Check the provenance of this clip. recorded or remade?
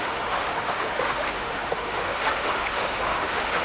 remade